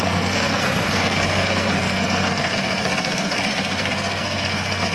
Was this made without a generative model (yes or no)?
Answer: no